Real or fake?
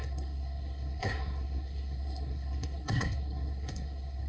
fake